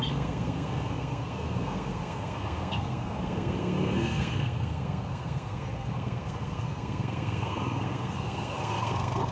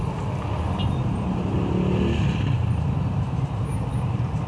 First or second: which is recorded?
second